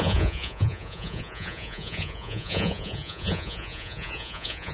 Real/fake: fake